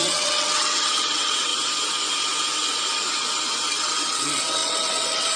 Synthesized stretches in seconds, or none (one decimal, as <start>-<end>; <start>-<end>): 0.0-1.5; 3.8-5.4